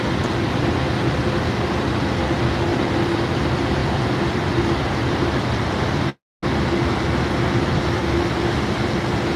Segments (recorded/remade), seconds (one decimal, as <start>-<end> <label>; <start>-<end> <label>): 0.0-9.4 recorded